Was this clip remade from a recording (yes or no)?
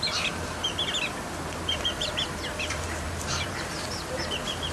yes